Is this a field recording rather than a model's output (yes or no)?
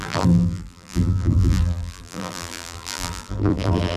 no